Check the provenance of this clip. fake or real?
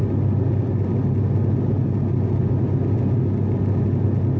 real